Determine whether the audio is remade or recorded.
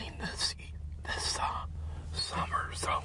recorded